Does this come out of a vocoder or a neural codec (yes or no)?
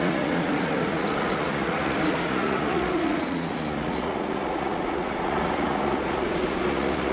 yes